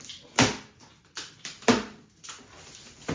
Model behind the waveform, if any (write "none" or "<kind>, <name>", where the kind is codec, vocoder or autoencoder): none